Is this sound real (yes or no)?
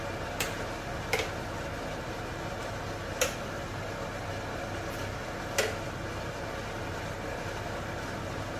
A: yes